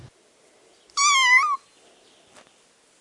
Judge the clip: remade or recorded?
recorded